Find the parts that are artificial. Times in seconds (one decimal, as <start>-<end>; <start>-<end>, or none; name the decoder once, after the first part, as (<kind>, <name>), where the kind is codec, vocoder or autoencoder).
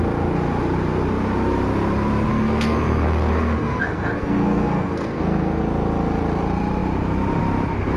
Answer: 2.3-5.6 (codec, SNAC)